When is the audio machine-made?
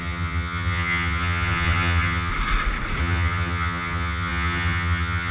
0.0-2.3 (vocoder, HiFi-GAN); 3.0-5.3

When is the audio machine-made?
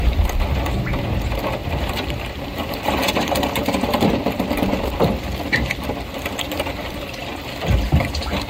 1.6-3.7 (vocoder, BigVGAN v2)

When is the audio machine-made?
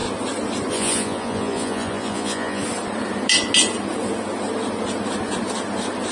0.7-2.6 (vocoder, Vocos)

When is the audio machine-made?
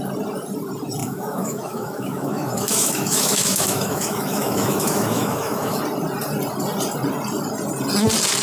1.0-5.8 (autoencoder, DAC-VAE)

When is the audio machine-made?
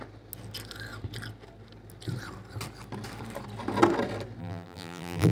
4.4-5.3 (vocoder, BigVGAN v2)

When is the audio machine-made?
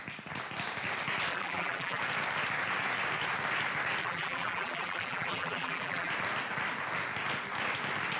1.3-2.0 (vocoder, BigVGAN v2); 4.0-6.1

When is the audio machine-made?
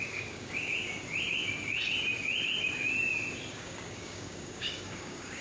0.0-0.7 (codec, DAC); 3.5-5.4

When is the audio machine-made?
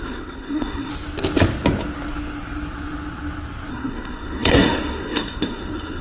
0.0-0.9 (codec, SNAC); 3.7-6.0